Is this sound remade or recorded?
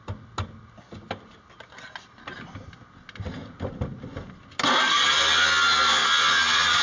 recorded